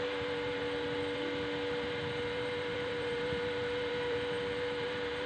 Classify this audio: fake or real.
fake